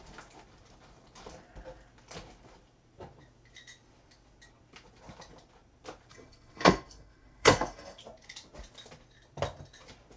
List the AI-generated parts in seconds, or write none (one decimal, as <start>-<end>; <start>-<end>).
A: 6.1-8.0